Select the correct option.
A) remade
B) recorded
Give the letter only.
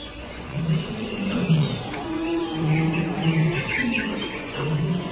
A